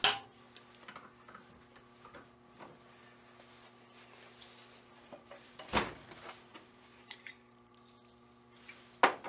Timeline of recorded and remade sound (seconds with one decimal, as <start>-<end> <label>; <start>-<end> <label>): 0.0-4.9 recorded; 4.9-5.5 remade; 5.5-6.5 recorded; 6.5-7.7 remade; 7.7-9.3 recorded